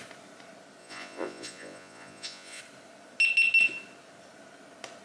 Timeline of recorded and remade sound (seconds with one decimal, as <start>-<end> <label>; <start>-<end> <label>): 0.0-0.8 recorded; 0.8-2.6 remade; 2.6-5.0 recorded